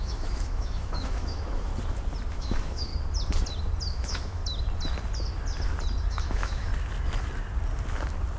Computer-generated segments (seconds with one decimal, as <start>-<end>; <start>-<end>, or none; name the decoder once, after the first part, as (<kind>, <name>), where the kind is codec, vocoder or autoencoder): 0.0-1.7 (autoencoder, DAC-VAE); 2.3-2.9; 3.9-4.4; 6.1-6.7